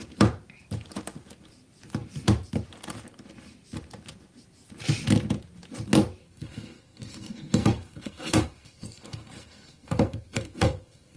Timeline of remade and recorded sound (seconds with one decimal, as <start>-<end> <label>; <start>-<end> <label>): 0.0-6.2 recorded; 6.2-11.2 remade